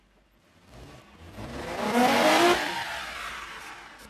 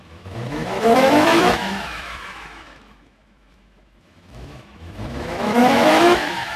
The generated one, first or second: second